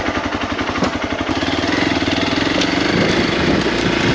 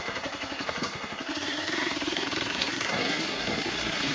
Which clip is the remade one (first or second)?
second